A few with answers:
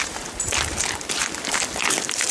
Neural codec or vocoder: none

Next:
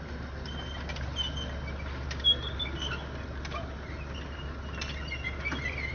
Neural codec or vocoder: none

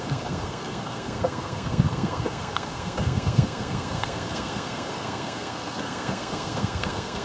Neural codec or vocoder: codec, SNAC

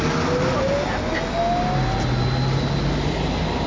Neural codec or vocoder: none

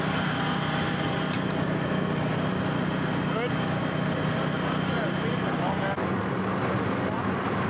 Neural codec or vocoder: none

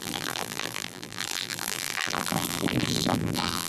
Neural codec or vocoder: vocoder, BigVGAN v2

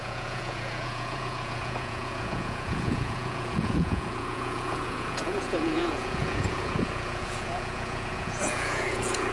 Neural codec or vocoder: vocoder, Vocos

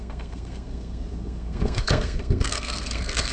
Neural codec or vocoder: codec, SNAC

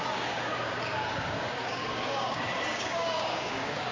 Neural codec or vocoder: codec, DAC